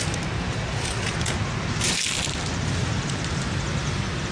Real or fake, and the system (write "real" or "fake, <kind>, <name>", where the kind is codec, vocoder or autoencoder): real